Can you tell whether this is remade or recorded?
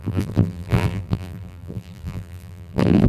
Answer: remade